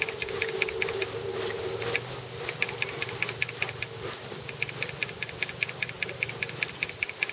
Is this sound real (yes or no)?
yes